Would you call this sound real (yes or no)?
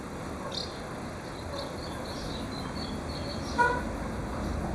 yes